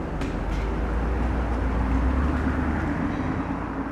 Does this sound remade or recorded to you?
recorded